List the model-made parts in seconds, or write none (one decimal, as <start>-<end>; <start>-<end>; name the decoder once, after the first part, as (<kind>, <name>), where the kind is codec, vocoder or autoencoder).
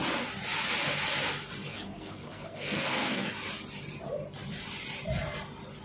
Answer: 1.7-3.3 (codec, SNAC)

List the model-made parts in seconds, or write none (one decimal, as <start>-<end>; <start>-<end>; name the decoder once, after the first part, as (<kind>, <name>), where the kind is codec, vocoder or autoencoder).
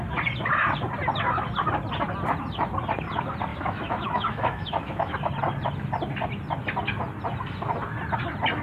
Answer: 3.5-5.3 (autoencoder, DAC-VAE)